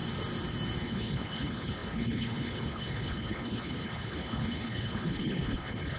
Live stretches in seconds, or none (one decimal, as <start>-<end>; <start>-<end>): 0.0-0.8